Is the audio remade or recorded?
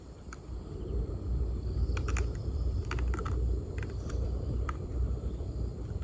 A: remade